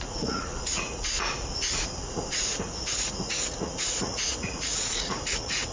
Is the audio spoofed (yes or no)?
yes